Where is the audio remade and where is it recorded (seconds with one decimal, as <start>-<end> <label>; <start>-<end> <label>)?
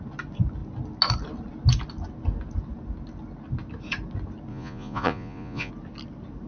0.0-4.5 recorded; 4.5-5.7 remade; 5.7-6.5 recorded